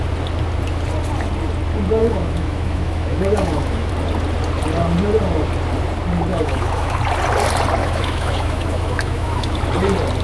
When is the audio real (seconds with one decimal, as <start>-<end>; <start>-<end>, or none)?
0.0-2.0; 3.9-6.3; 7.0-7.8; 9.6-10.2